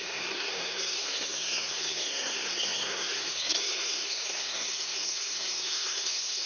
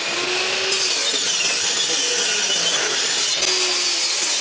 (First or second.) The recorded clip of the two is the second